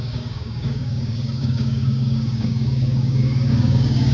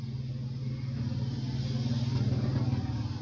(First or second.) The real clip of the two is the second